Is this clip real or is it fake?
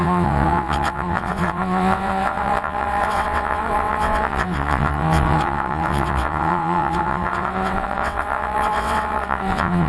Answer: fake